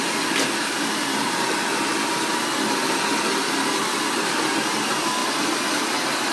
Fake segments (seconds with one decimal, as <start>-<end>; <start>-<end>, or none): none